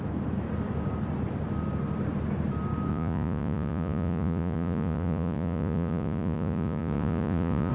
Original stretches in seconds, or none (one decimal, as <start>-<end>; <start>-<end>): 0.0-2.9